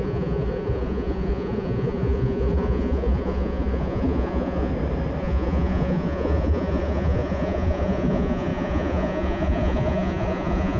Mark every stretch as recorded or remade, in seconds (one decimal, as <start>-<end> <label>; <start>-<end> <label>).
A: 0.0-4.7 remade; 4.7-5.2 recorded; 5.2-10.8 remade